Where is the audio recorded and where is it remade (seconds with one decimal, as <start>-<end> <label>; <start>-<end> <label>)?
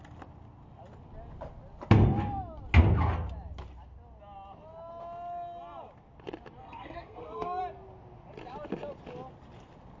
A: 0.0-6.6 recorded; 6.6-7.6 remade; 7.6-10.0 recorded